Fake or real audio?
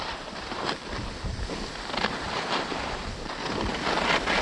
real